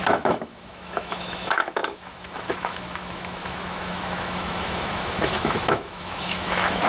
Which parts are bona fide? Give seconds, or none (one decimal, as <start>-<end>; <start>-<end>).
none